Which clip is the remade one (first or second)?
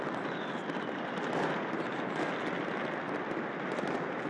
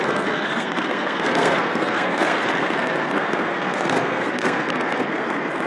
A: second